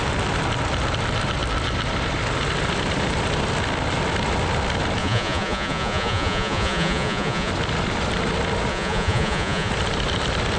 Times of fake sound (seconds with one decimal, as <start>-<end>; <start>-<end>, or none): 5.0-7.5; 8.7-9.7